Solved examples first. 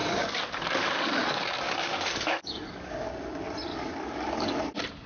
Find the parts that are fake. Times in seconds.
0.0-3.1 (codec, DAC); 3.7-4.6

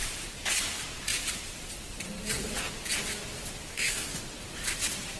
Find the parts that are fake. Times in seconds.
3.7-4.2 (codec, DAC)